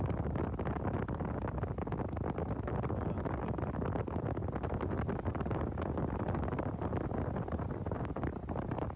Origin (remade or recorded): recorded